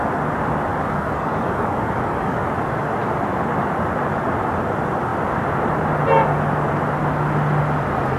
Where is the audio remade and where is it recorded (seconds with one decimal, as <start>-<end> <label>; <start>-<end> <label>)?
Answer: 0.0-0.7 recorded; 0.7-2.5 remade; 2.5-8.2 recorded